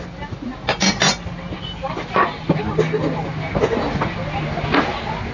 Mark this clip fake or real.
real